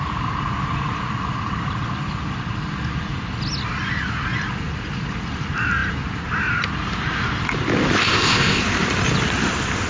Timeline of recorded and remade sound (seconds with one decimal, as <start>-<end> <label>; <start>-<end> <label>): 0.0-8.0 recorded; 8.0-8.6 remade; 8.6-9.9 recorded